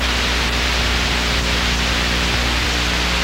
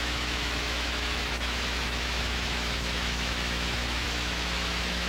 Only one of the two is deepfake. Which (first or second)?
second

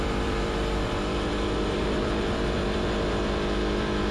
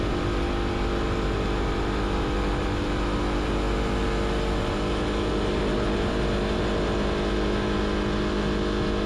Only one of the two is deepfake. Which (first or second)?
first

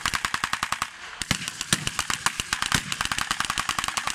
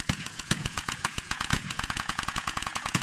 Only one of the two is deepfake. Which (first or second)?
second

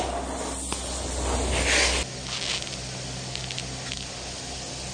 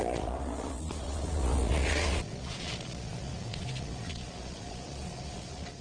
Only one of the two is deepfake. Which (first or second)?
second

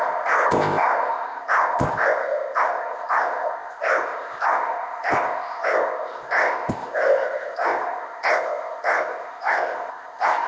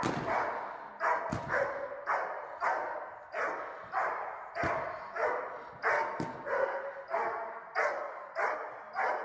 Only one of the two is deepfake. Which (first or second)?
first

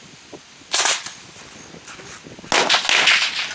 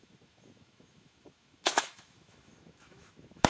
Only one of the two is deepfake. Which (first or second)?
second